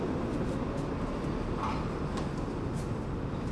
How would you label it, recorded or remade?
recorded